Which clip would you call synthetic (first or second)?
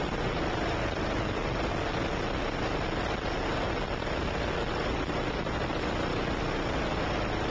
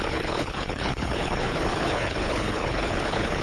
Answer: second